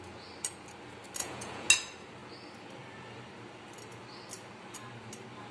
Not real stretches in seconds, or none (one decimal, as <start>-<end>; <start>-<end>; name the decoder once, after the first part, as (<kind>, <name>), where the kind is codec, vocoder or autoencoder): 1.2-1.7 (vocoder, Vocos)